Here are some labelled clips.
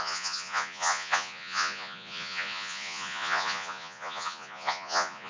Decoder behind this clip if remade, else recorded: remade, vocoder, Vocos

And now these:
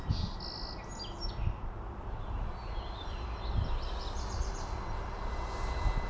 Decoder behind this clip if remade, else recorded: recorded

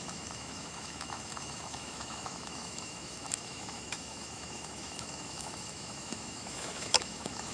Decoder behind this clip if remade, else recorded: remade, autoencoder, DAC-VAE